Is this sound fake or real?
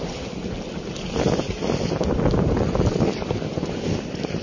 real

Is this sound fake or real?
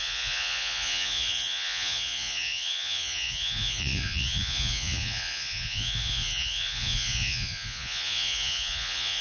fake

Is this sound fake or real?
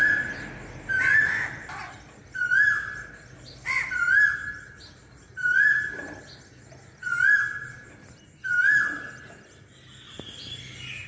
real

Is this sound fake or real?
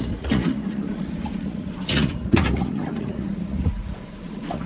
fake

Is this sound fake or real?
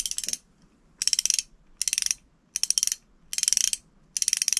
real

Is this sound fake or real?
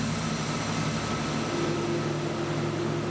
real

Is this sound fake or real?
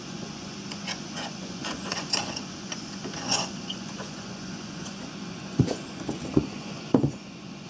fake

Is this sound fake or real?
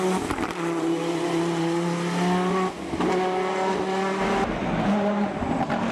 real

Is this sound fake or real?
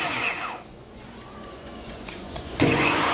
fake